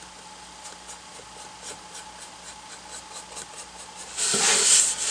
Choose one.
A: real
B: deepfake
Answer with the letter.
A